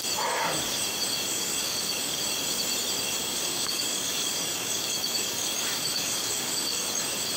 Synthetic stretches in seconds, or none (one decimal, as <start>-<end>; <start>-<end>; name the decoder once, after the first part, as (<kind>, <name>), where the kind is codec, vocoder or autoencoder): 1.3-2.2 (codec, DAC); 3.2-6.8